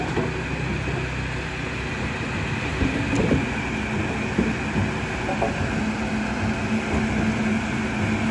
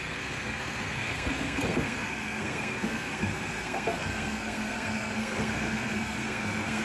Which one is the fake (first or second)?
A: second